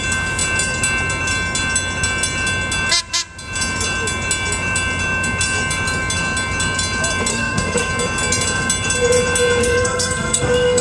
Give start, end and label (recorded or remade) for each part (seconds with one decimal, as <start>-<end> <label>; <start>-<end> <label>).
0.0-7.3 recorded; 7.3-7.9 remade; 7.9-9.6 recorded; 9.6-10.8 remade